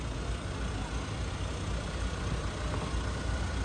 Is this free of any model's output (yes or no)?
yes